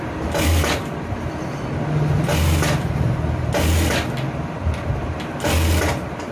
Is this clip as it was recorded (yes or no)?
yes